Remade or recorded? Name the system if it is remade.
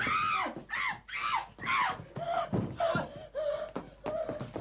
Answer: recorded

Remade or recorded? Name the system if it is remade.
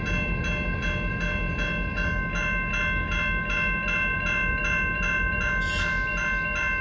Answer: recorded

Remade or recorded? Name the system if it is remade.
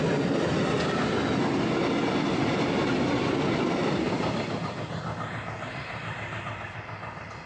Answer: recorded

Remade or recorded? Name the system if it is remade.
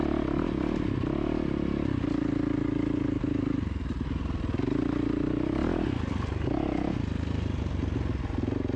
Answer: recorded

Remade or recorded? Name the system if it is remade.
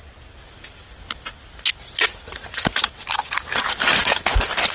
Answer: recorded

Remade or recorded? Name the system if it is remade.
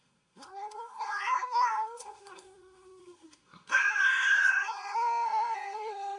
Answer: remade, codec, SNAC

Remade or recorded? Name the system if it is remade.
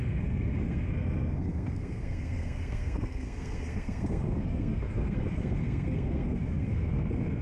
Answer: remade, codec, SNAC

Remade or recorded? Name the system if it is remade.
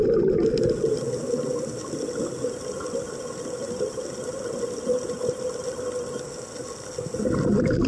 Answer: recorded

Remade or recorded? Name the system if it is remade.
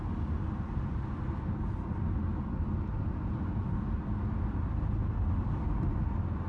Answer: recorded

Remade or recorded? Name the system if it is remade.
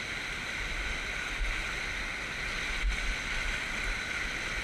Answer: recorded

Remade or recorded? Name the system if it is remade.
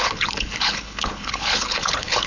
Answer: remade, codec, HILCodec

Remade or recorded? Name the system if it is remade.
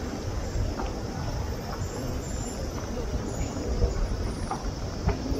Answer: remade, vocoder, BigVGAN v2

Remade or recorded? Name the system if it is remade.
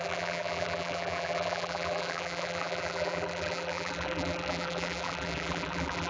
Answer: remade, vocoder, BigVGAN v2